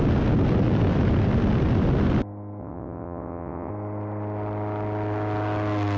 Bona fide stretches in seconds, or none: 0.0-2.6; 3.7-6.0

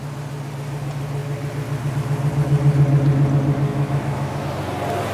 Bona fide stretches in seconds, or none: 0.0-3.7; 4.4-5.1

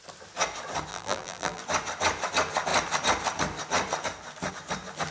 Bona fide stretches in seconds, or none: 0.0-0.9; 1.6-5.1